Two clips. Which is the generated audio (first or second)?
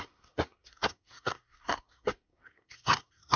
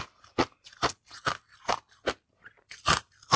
first